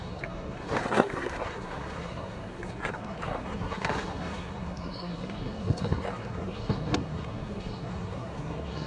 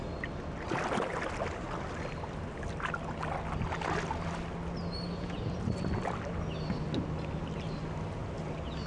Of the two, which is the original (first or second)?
second